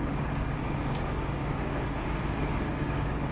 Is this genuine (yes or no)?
no